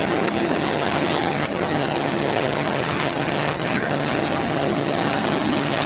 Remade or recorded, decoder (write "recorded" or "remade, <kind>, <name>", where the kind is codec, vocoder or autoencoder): remade, vocoder, HiFi-GAN